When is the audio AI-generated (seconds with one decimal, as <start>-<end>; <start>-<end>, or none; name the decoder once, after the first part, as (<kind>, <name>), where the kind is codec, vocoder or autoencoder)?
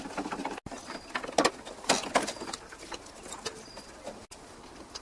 none